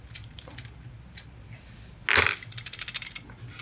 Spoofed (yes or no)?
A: no